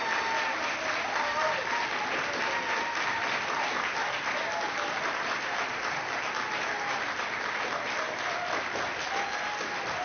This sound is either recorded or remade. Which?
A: recorded